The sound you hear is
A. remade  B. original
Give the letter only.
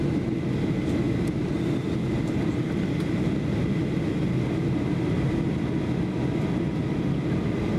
B